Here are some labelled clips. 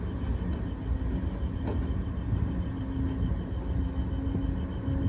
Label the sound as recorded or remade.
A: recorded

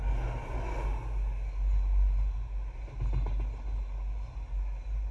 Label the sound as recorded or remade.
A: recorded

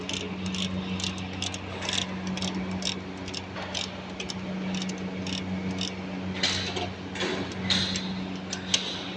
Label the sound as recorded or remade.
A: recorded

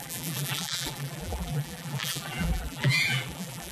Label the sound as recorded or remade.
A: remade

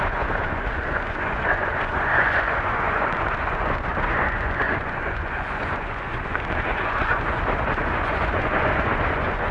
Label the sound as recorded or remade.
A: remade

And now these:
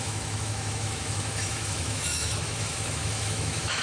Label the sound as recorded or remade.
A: remade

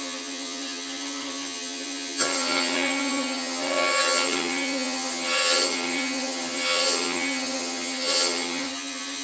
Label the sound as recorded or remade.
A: remade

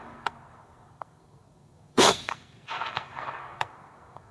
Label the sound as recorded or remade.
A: remade